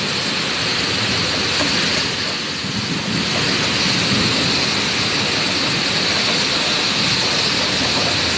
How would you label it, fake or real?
real